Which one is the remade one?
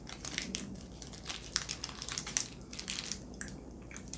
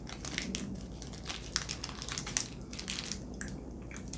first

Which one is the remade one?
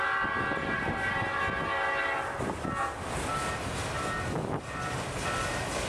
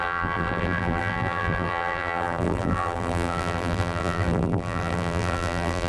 second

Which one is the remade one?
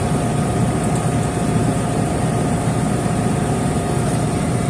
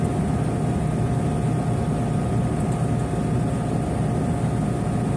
first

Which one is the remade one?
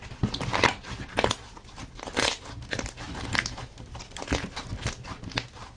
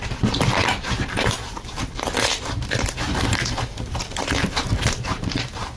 second